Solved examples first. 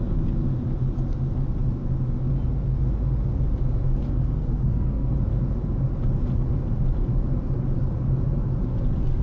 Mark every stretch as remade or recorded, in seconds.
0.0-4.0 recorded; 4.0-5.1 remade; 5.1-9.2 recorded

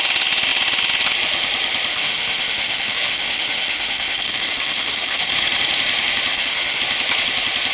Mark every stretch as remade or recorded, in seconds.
0.0-1.9 recorded; 1.9-5.3 remade; 5.3-6.3 recorded; 6.3-6.8 remade; 6.8-7.7 recorded